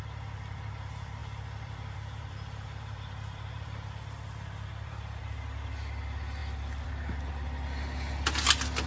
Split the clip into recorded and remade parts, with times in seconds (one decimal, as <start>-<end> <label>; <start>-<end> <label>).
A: 0.0-1.2 recorded; 1.2-5.2 remade; 5.2-6.4 recorded; 6.4-6.9 remade; 6.9-8.9 recorded